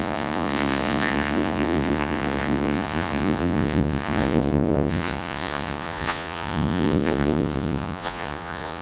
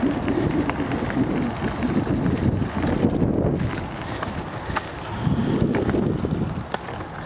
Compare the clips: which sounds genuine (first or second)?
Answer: second